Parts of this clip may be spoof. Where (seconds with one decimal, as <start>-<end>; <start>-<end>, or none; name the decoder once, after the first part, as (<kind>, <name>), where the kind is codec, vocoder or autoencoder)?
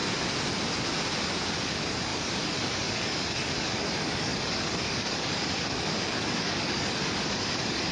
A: 1.6-7.9 (codec, DAC)